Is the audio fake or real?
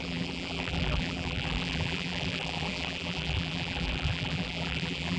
fake